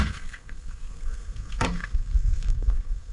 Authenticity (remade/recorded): remade